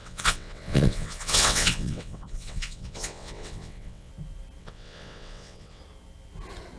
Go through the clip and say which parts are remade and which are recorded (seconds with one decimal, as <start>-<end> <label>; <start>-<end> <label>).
0.0-4.1 remade; 4.1-4.6 recorded; 4.6-5.8 remade; 5.8-6.8 recorded